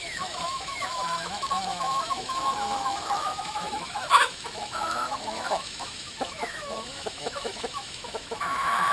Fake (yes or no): yes